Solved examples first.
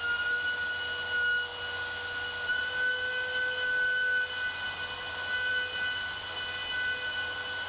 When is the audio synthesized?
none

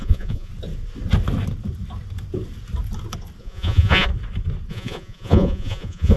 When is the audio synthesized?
0.0-0.5; 3.4-4.1; 4.7-6.2

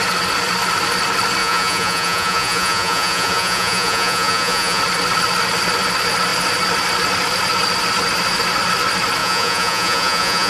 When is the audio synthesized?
1.4-4.8; 9.2-10.5

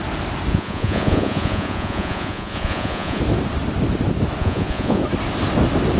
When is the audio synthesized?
0.5-3.2; 4.4-5.0

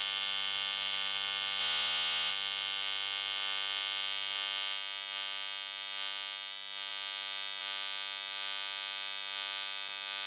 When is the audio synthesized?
1.6-2.3